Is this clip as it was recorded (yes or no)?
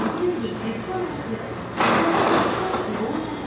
yes